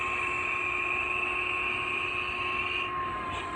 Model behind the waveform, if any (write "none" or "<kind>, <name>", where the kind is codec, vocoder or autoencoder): none